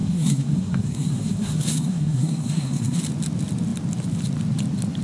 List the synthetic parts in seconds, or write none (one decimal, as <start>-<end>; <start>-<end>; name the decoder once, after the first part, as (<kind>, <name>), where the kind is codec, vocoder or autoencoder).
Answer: 0.0-3.0 (codec, SNAC)